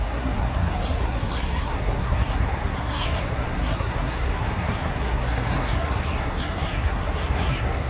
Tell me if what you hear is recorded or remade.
remade